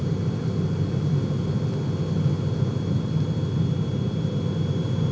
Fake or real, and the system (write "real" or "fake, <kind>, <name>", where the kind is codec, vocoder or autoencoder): real